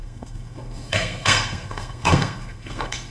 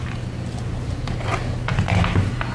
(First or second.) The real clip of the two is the second